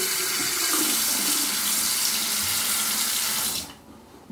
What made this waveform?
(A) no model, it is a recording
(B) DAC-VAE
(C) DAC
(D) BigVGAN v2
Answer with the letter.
A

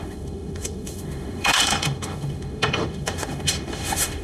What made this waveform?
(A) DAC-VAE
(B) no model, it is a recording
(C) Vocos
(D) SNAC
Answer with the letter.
A